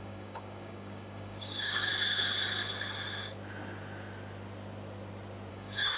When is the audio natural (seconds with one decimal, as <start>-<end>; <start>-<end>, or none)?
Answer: 1.9-5.5